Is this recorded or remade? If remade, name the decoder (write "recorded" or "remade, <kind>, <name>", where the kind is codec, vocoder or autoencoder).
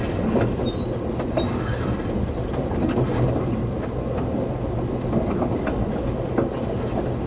recorded